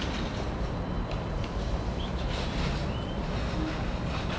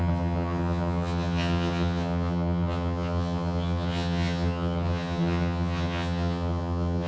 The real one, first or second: first